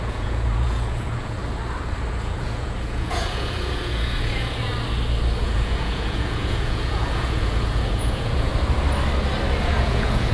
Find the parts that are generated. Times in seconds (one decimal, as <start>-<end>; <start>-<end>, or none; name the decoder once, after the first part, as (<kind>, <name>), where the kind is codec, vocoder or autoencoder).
0.0-1.4 (vocoder, Vocos); 2.1-4.7; 5.4-8.5; 9.6-10.3